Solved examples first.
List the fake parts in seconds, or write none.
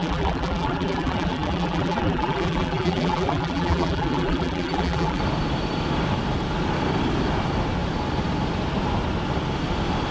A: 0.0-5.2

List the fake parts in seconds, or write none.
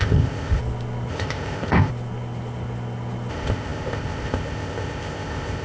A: 0.0-0.6; 1.1-1.9; 3.3-5.6